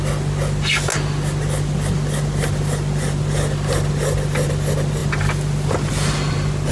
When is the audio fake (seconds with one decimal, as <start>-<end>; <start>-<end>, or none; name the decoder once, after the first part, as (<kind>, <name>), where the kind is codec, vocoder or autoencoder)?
none